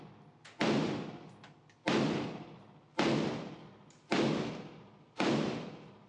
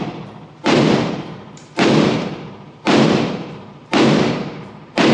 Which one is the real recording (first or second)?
first